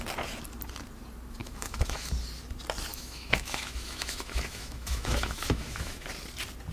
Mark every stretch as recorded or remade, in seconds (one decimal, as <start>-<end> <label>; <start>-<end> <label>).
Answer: 0.0-1.4 recorded; 1.4-2.1 remade; 2.1-2.9 recorded; 2.9-6.1 remade; 6.1-6.7 recorded